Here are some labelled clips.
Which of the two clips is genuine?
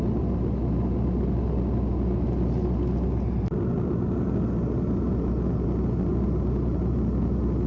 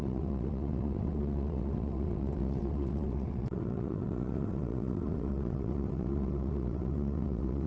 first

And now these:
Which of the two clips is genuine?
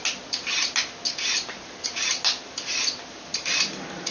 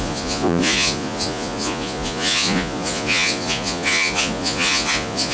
first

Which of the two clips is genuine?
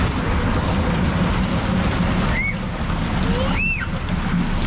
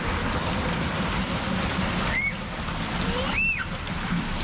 first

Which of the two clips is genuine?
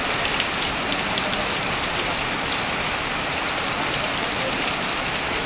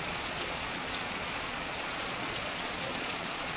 first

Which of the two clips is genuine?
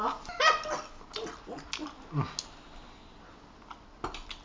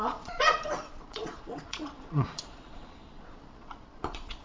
first